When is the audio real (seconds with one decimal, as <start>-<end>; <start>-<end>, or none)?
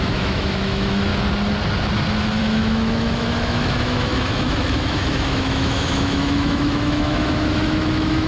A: 1.1-2.4